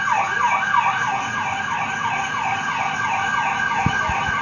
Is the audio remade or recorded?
recorded